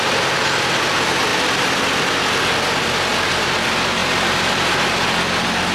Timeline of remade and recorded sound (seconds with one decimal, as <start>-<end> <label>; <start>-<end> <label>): 0.0-5.7 recorded